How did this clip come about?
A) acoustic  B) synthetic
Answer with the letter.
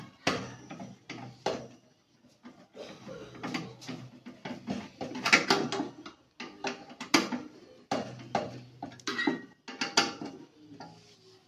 A